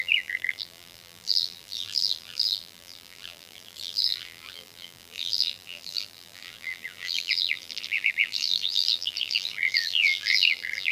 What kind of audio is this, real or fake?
fake